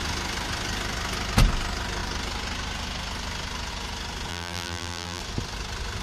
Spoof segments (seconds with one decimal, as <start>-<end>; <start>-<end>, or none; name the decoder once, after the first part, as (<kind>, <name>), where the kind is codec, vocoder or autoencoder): 4.3-5.2 (vocoder, BigVGAN v2)